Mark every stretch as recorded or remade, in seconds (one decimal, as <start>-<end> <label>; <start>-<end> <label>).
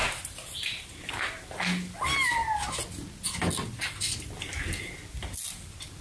0.0-6.0 recorded